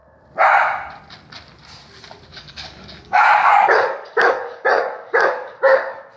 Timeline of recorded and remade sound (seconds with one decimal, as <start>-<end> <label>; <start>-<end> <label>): 0.0-2.3 recorded; 2.3-6.2 remade